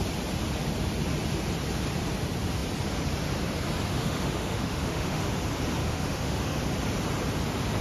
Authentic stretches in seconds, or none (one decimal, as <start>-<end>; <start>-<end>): 0.0-3.9; 5.2-5.8; 6.6-7.8

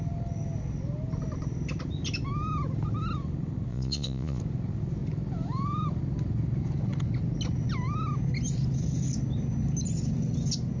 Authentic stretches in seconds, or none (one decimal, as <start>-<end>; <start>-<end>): 0.0-3.7; 4.4-10.8

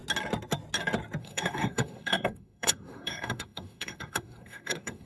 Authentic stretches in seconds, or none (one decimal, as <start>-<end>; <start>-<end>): 0.0-1.2

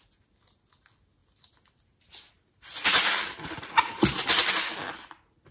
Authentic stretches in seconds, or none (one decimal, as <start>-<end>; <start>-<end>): 0.0-5.5

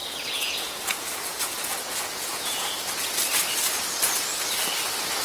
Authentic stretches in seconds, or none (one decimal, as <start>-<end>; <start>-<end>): 3.1-5.2

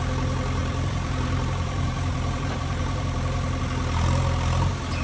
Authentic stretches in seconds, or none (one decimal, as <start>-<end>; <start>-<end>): 0.0-0.6; 3.6-5.0